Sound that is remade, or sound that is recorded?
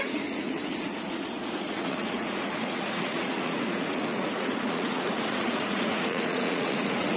remade